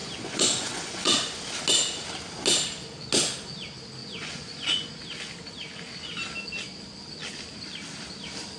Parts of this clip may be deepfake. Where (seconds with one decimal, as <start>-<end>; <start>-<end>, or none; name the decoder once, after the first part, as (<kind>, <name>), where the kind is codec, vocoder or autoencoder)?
0.0-1.4 (vocoder, Vocos); 4.0-5.0